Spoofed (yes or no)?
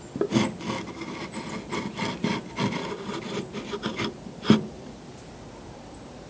no